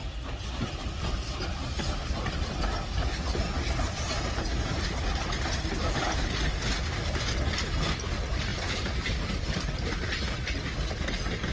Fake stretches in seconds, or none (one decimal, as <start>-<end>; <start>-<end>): none